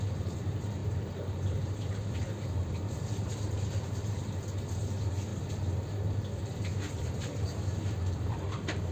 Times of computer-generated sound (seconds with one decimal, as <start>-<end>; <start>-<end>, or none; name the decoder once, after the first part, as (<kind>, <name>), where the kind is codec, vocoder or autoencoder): 0.0-5.3 (vocoder, BigVGAN v2); 6.4-8.9